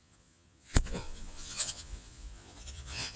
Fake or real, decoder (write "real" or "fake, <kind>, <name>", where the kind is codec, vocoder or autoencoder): fake, vocoder, Vocos